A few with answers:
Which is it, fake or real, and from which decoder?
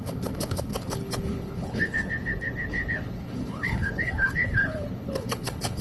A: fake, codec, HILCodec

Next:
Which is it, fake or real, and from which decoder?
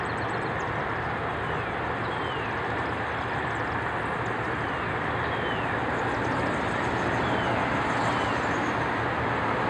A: real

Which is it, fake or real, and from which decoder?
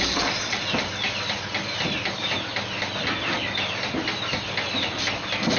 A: real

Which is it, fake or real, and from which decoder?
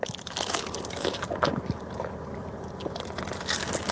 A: real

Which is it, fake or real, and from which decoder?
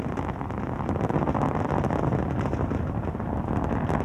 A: real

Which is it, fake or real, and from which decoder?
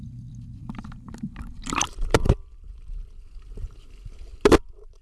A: fake, vocoder, BigVGAN v2